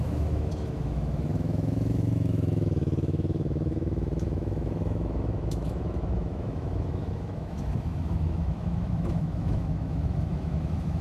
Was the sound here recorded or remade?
remade